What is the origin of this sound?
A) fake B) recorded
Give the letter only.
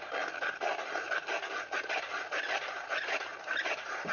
B